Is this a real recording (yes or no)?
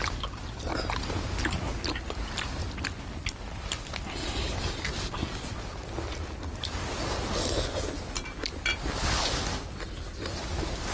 yes